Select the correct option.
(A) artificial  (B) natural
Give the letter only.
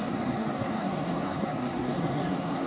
A